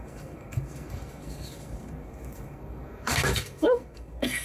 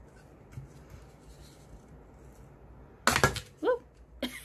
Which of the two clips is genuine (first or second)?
second